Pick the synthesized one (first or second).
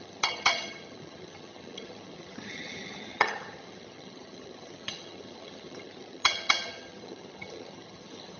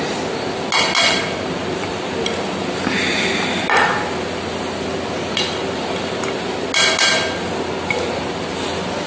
first